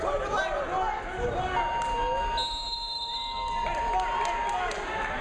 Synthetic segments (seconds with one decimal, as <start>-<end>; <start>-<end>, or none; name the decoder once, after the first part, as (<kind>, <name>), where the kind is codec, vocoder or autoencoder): none